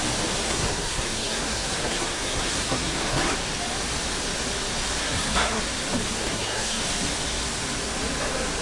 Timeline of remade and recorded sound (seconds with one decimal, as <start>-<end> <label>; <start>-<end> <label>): 0.0-0.4 recorded; 0.4-3.3 remade; 3.3-5.0 recorded; 5.0-5.6 remade; 5.6-6.1 recorded; 6.1-6.8 remade; 6.8-8.6 recorded

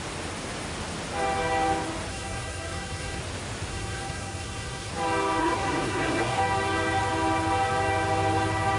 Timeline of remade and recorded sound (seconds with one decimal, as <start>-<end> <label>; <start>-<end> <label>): 0.0-2.1 recorded; 2.1-3.2 remade; 3.2-3.7 recorded; 3.7-4.9 remade; 4.9-5.4 recorded; 5.4-6.4 remade; 6.4-8.8 recorded

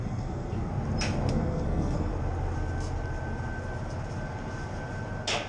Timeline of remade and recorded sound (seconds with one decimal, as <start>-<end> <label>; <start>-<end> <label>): 0.0-0.7 remade; 0.7-1.3 recorded; 1.3-2.1 remade; 2.1-5.5 recorded

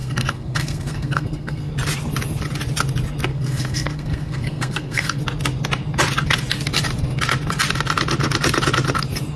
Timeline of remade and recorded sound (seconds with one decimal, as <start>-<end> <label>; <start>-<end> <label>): 0.0-1.7 remade; 1.7-3.3 recorded; 3.3-5.2 remade; 5.2-9.4 recorded

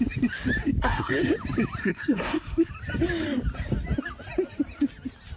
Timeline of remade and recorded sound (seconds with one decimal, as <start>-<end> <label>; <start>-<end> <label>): 0.0-0.8 recorded; 0.8-1.3 remade; 1.3-1.8 recorded; 1.8-2.7 remade; 2.7-5.4 recorded

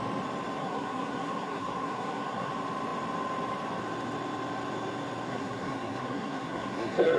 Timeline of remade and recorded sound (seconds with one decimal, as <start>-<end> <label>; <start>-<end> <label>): 0.0-0.6 recorded; 0.6-2.5 remade; 2.5-5.3 recorded; 5.3-7.2 remade